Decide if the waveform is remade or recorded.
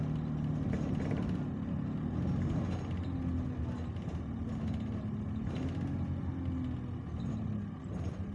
recorded